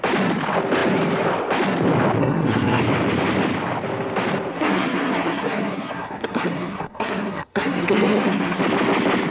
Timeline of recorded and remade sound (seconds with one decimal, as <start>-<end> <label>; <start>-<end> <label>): 0.0-2.2 recorded; 2.2-2.8 remade; 2.8-4.5 recorded; 4.5-8.6 remade; 8.6-9.3 recorded